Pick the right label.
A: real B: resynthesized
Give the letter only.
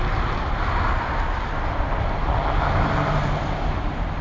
A